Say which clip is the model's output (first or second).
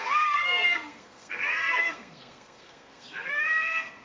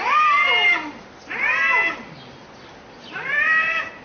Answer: first